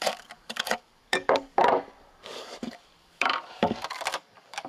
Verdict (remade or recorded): remade